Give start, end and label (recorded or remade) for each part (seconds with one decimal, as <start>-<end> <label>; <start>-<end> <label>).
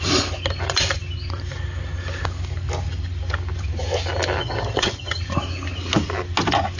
0.0-4.4 recorded; 4.4-5.2 remade; 5.2-6.8 recorded